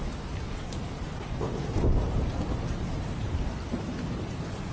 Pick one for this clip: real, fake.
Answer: fake